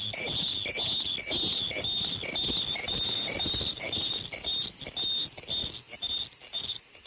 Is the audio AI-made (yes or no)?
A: no